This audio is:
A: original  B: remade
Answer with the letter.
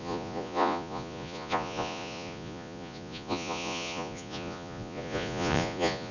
B